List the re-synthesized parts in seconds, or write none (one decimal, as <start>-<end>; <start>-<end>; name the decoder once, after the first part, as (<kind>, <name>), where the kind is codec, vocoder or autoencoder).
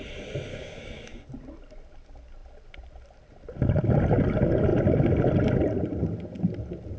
0.5-1.3 (codec, DAC)